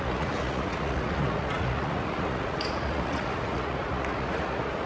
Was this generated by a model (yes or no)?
yes